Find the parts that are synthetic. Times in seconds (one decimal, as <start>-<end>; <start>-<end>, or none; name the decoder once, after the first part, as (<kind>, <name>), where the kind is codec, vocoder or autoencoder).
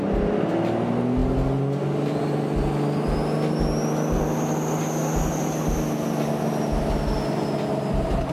none